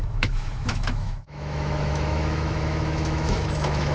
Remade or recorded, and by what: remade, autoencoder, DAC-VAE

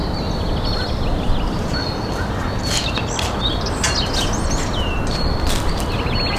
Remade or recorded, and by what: recorded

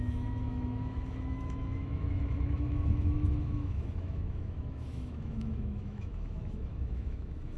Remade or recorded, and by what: remade, autoencoder, DAC-VAE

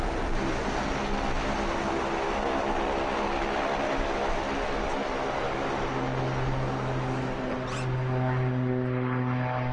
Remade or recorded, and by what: recorded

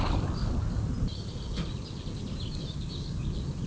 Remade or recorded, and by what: recorded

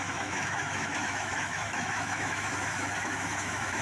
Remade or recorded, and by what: remade, autoencoder, DAC-VAE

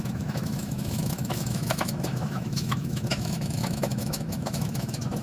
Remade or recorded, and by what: remade, autoencoder, DAC-VAE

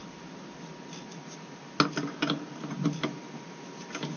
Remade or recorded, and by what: recorded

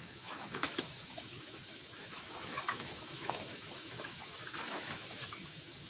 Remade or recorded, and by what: remade, autoencoder, DAC-VAE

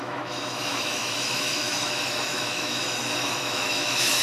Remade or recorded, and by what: remade, autoencoder, DAC-VAE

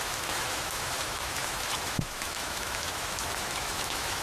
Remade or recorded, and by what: remade, autoencoder, DAC-VAE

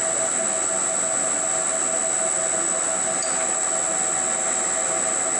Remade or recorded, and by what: recorded